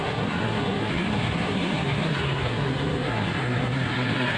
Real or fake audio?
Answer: fake